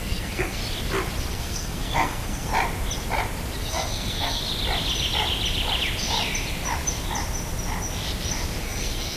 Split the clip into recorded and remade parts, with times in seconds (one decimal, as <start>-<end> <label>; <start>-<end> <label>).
0.0-0.6 remade; 0.6-1.3 recorded; 1.3-2.5 remade; 2.5-3.6 recorded; 3.6-4.4 remade; 4.4-8.6 recorded; 8.6-9.2 remade